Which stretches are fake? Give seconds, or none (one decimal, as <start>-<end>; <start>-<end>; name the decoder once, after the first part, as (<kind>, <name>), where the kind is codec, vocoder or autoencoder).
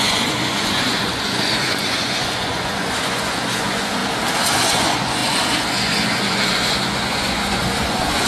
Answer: 0.0-4.0 (vocoder, Vocos); 4.5-8.3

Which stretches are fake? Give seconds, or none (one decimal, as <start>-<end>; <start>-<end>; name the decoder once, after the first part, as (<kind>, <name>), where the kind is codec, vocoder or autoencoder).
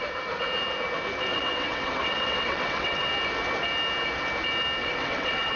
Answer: 1.3-3.1 (vocoder, WaveNeXt); 4.8-5.6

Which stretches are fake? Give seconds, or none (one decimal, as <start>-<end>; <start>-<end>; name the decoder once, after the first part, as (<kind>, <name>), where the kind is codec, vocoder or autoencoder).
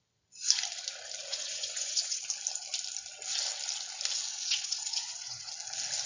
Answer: 1.3-2.2 (vocoder, Vocos); 4.3-5.5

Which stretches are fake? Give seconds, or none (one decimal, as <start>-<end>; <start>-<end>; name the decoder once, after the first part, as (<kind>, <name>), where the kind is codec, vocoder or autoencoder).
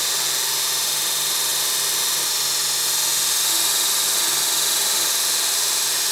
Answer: none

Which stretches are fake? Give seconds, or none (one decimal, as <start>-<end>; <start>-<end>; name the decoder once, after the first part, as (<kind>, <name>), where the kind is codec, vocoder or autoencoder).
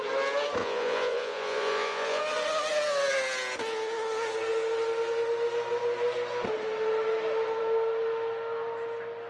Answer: 0.6-2.2 (vocoder, Vocos)